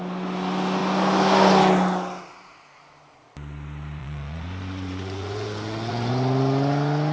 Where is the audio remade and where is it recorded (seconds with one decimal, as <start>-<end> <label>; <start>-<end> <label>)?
0.0-4.0 recorded; 4.0-6.1 remade; 6.1-7.1 recorded